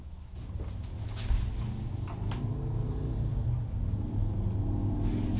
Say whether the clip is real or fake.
real